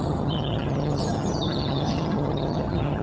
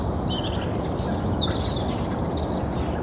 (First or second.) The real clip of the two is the second